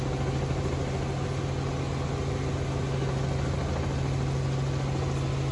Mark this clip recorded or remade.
recorded